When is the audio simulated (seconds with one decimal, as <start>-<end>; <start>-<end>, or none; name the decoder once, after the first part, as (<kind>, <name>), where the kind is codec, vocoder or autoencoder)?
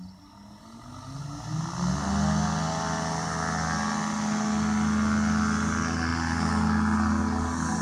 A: none